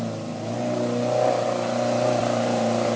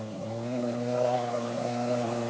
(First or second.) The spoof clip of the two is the second